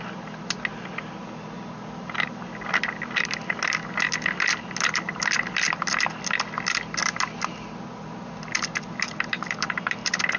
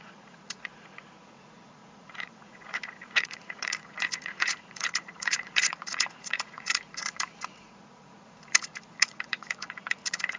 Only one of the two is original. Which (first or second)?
first